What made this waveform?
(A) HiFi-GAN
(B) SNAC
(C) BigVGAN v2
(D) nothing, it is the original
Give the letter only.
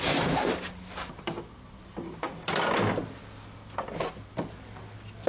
D